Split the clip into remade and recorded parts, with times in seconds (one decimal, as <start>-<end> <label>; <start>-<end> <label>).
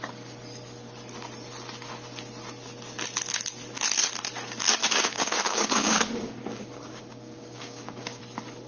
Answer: 0.0-4.8 recorded; 4.8-8.2 remade; 8.2-8.7 recorded